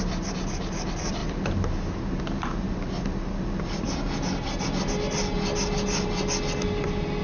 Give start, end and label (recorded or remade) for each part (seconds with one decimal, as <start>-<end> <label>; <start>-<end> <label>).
0.0-7.2 recorded